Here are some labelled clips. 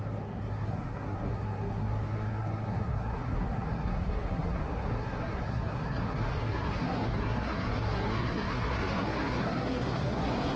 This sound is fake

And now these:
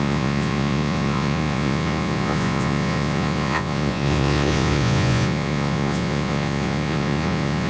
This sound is fake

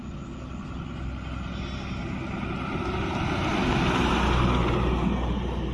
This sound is real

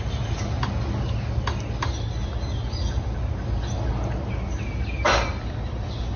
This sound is real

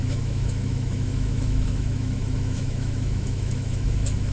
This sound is fake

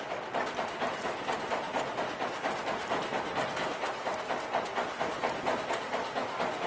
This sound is real